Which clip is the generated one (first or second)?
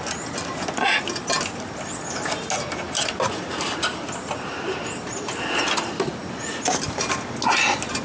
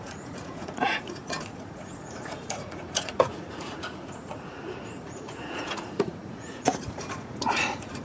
second